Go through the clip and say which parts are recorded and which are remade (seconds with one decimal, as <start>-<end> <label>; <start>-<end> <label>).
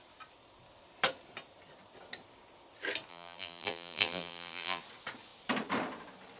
0.0-3.1 recorded; 3.1-4.8 remade; 4.8-6.4 recorded